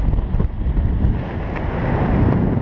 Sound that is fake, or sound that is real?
real